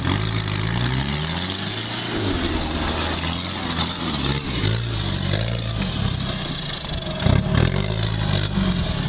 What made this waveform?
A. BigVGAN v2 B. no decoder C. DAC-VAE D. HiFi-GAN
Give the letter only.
B